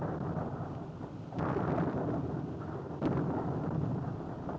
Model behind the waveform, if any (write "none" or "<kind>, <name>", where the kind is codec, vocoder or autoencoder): none